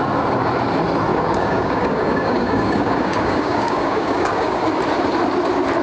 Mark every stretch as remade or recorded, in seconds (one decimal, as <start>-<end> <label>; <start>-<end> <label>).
0.0-1.1 recorded; 1.1-4.6 remade; 4.6-5.8 recorded